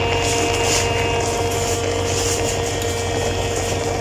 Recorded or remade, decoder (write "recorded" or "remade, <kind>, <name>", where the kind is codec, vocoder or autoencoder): recorded